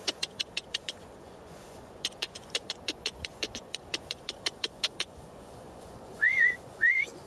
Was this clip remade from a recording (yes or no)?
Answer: yes